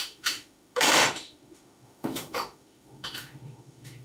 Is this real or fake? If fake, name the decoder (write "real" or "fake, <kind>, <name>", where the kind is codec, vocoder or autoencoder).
fake, autoencoder, DAC-VAE